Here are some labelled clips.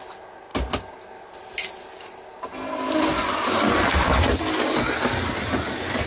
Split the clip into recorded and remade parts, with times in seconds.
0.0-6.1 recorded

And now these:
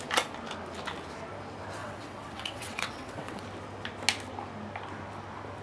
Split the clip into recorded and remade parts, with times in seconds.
0.0-1.8 recorded; 1.8-3.4 remade; 3.4-5.6 recorded